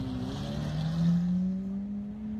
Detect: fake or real real